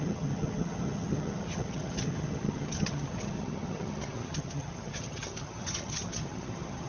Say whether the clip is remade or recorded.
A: remade